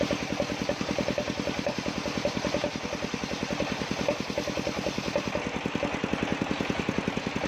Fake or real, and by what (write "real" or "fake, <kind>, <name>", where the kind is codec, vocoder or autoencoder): real